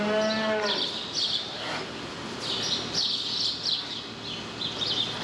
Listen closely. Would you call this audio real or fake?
real